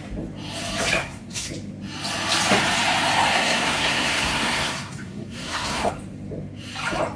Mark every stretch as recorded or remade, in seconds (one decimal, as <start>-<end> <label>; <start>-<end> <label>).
0.0-1.0 recorded; 1.0-1.5 remade; 1.5-3.3 recorded; 3.3-5.9 remade; 5.9-7.2 recorded

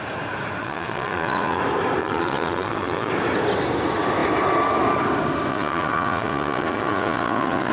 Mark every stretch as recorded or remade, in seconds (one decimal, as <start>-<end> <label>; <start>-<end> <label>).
0.0-0.6 recorded; 0.6-1.6 remade; 1.6-2.0 recorded; 2.0-3.1 remade; 3.1-5.5 recorded; 5.5-7.7 remade